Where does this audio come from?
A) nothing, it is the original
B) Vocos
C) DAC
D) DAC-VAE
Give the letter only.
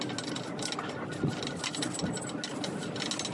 A